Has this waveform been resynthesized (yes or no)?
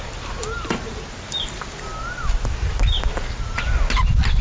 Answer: no